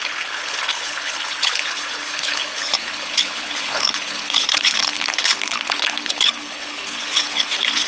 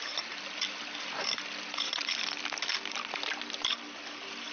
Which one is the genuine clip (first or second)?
second